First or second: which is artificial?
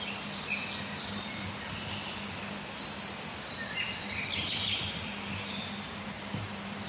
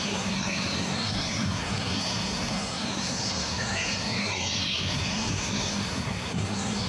second